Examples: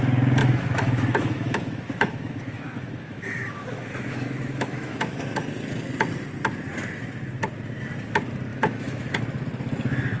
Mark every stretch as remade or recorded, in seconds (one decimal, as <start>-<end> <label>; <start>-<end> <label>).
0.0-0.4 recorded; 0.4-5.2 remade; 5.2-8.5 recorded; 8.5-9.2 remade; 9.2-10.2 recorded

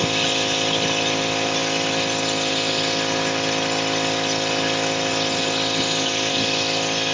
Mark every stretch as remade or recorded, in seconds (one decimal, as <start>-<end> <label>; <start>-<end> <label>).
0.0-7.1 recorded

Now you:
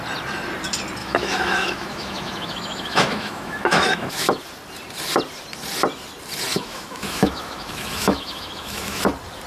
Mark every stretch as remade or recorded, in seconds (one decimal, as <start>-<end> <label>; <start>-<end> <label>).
0.0-1.0 recorded; 1.0-4.4 remade; 4.4-6.5 recorded; 6.5-9.0 remade; 9.0-9.5 recorded